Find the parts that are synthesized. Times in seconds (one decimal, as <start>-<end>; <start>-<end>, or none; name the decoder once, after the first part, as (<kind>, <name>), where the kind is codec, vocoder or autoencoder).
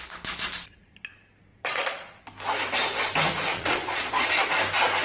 1.5-2.2 (vocoder, Vocos); 3.5-4.3